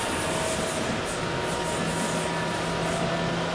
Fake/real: real